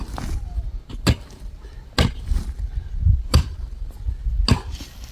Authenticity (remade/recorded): recorded